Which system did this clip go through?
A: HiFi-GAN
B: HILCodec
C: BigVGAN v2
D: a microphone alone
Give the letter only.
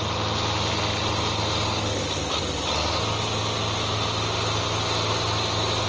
D